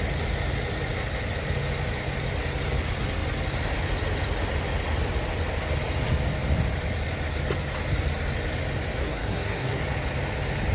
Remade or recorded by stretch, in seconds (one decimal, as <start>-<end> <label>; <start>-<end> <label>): 0.0-9.0 recorded; 9.0-9.8 remade; 9.8-10.7 recorded